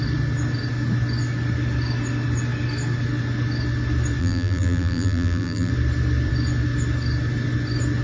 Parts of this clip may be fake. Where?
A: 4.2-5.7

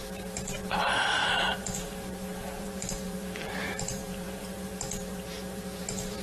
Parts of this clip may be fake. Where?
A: 0.0-6.2

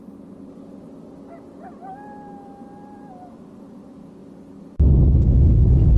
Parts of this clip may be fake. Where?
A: none

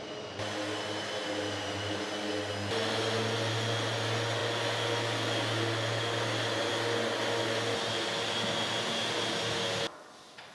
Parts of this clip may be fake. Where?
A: none

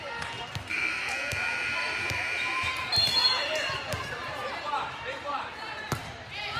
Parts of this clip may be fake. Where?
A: 1.4-5.4

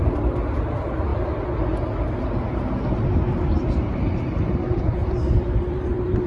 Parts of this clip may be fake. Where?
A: 5.0-6.3